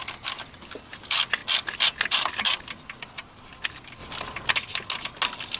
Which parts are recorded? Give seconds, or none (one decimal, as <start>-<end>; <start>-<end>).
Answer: 0.0-5.6